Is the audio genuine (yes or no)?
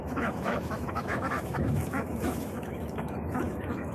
no